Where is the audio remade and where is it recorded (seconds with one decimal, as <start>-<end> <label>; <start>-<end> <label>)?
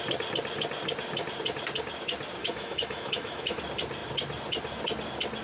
0.0-2.4 recorded; 2.4-3.6 remade; 3.6-5.4 recorded